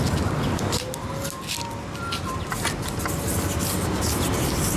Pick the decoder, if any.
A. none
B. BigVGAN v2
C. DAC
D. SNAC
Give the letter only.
A